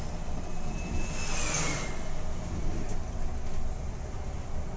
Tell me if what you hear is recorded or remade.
recorded